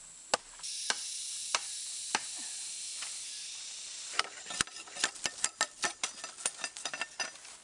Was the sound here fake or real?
real